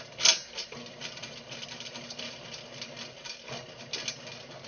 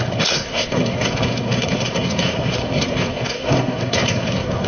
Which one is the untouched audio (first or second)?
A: first